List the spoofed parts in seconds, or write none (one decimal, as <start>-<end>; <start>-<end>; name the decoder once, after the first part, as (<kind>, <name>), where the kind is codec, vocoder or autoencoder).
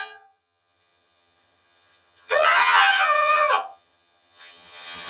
0.0-5.1 (vocoder, HiFi-GAN)